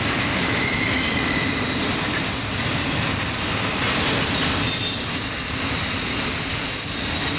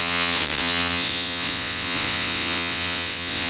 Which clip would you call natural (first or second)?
first